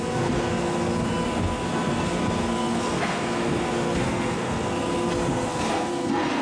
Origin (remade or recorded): remade